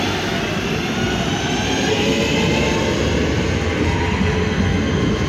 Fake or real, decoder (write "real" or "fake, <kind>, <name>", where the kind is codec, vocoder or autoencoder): real